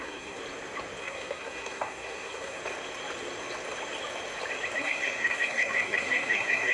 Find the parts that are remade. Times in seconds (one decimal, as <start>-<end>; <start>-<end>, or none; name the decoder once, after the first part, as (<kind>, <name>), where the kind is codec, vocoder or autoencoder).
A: 0.0-0.4 (codec, SNAC); 1.0-2.6; 4.8-6.7